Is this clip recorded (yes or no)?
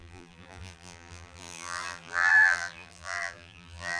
no